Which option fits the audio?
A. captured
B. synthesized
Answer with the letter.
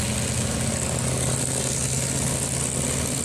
A